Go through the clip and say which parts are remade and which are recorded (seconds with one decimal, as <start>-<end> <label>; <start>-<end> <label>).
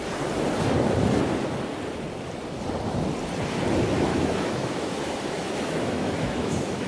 0.0-4.1 recorded; 4.1-6.9 remade